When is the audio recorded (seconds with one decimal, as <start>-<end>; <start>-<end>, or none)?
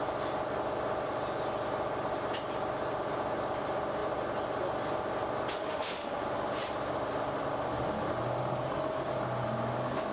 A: 0.0-5.5; 6.2-10.1